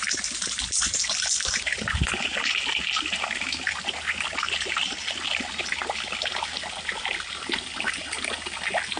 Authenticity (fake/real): real